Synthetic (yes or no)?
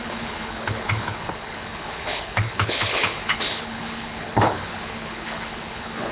yes